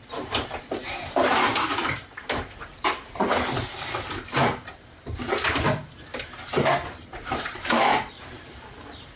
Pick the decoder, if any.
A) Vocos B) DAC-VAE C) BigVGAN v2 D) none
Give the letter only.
C